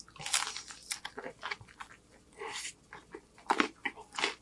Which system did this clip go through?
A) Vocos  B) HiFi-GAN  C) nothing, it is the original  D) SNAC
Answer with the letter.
C